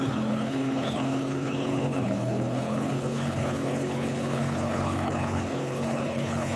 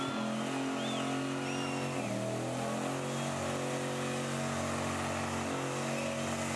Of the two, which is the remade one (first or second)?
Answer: first